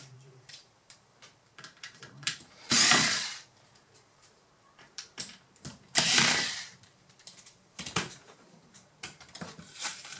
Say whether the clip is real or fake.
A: fake